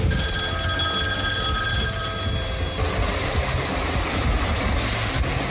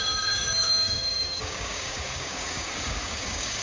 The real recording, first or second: first